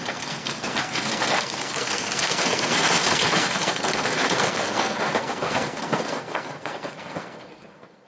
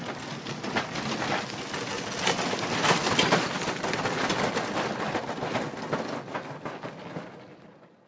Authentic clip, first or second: second